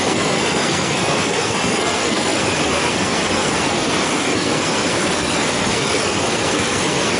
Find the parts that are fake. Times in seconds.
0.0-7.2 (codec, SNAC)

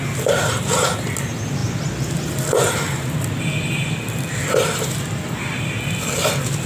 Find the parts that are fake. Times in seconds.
none

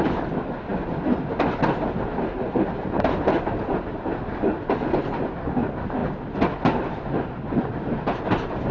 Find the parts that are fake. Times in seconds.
none

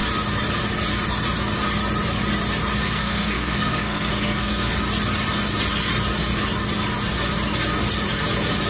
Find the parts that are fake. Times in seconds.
2.8-4.7 (codec, SNAC)

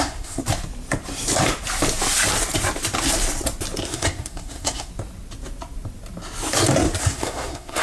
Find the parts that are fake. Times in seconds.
0.0-0.4 (codec, SNAC); 3.9-4.9; 7.0-7.8